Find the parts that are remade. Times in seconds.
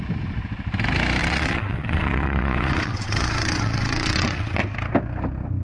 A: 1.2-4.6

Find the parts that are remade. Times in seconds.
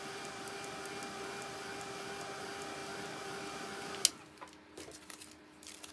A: none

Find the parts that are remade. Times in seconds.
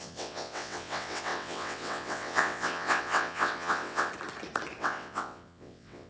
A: 0.0-4.1; 4.8-6.1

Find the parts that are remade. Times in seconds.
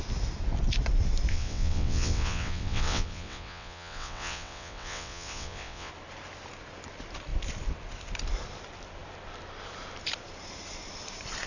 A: 1.3-5.9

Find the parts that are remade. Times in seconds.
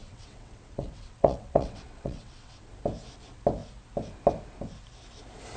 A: 0.0-2.7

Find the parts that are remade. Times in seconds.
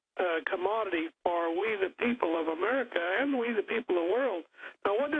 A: 1.6-4.7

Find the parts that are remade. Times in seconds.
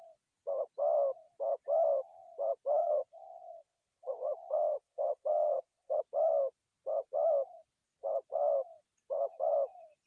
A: 2.8-6.0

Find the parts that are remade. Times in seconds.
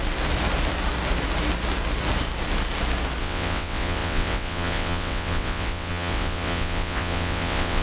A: 3.2-7.8